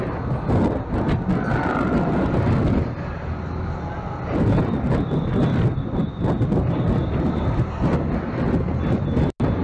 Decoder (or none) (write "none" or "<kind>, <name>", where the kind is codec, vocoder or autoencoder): none